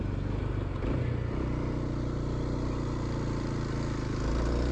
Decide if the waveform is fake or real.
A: real